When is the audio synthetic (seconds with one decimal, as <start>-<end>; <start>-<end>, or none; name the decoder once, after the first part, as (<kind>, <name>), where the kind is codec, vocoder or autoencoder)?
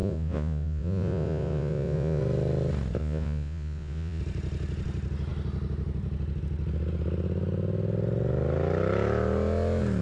0.0-2.2 (vocoder, Vocos); 3.0-4.2